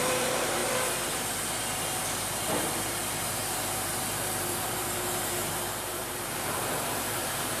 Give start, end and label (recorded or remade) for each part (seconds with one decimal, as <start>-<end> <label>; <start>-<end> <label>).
0.0-0.6 remade; 0.6-1.9 recorded; 1.9-7.6 remade